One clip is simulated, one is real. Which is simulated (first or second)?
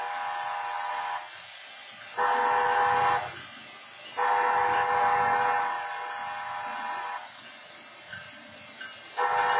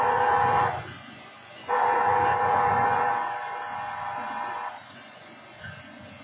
second